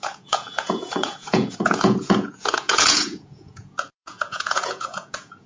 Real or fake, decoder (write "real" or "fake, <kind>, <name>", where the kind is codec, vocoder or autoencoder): fake, vocoder, Vocos